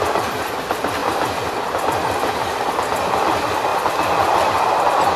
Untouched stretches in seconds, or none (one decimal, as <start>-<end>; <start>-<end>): 0.0-5.2